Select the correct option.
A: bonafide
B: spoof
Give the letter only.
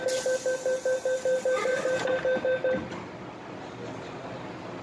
A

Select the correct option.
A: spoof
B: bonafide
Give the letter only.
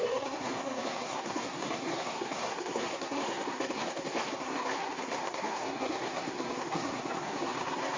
A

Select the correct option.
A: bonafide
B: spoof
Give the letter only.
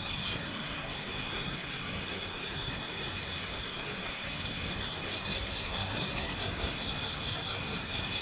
B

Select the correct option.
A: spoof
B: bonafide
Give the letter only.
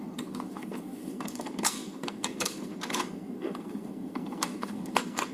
A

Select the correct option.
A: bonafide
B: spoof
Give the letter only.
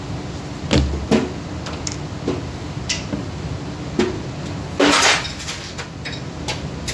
A